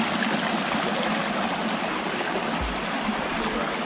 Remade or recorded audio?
recorded